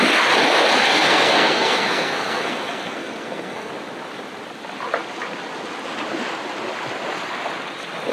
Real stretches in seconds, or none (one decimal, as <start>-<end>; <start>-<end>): 0.0-0.9; 3.7-8.1